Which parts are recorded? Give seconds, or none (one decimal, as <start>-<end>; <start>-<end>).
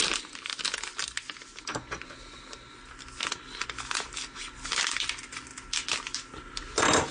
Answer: 0.0-7.1